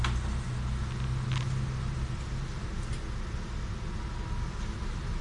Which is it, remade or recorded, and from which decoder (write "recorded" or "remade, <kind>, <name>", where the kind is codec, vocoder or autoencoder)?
recorded